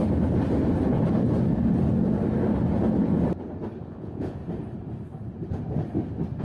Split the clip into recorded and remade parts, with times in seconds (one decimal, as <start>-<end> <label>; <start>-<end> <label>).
0.0-3.8 recorded; 3.8-4.4 remade; 4.4-6.4 recorded